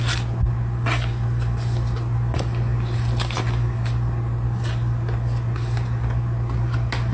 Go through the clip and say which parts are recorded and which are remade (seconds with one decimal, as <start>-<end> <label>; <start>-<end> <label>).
0.0-7.1 recorded